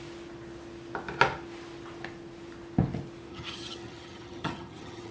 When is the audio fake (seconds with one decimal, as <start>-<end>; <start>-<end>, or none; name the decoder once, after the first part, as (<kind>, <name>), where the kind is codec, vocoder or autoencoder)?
3.3-5.1 (vocoder, HiFi-GAN)